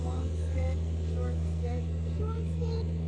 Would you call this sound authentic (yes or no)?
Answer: no